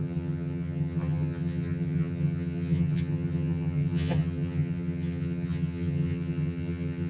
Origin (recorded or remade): remade